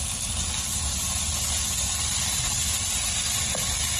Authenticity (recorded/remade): recorded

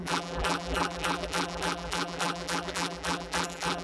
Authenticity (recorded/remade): remade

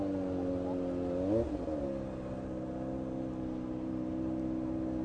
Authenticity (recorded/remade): recorded